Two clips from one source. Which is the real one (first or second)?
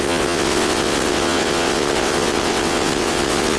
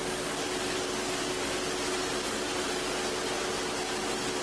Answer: second